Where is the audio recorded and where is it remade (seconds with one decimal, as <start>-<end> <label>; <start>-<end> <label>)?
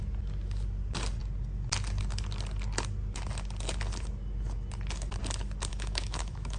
0.0-5.7 recorded; 5.7-6.6 remade